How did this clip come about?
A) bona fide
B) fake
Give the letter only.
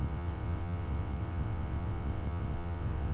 B